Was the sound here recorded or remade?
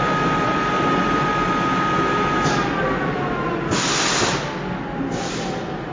recorded